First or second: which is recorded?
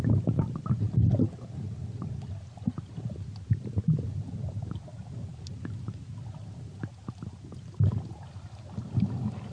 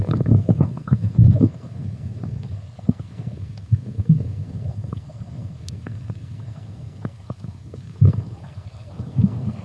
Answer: first